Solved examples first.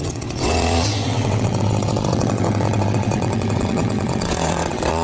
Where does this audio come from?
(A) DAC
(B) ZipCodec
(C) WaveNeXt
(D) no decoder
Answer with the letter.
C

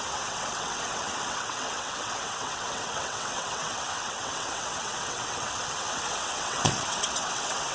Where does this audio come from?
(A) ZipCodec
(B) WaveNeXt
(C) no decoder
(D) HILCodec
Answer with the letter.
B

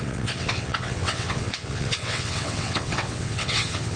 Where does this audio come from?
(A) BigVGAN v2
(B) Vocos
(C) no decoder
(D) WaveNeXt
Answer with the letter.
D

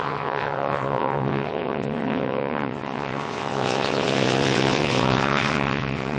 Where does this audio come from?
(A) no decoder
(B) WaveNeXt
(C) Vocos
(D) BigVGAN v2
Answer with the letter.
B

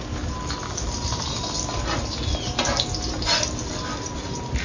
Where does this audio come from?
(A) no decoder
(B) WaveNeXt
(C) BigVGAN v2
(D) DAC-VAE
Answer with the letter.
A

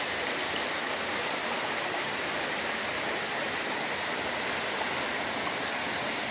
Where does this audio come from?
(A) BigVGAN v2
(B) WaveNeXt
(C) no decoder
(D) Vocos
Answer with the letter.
C